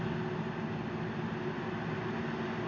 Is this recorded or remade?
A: recorded